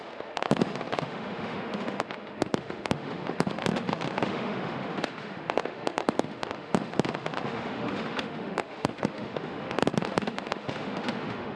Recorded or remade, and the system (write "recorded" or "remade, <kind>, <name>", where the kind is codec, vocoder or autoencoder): remade, autoencoder, DAC-VAE